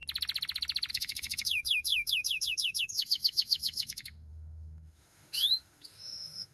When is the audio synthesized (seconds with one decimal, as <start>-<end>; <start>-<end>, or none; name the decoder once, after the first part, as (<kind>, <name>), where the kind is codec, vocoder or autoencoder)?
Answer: 0.9-6.5 (autoencoder, DAC-VAE)